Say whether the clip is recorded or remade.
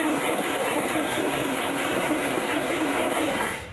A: remade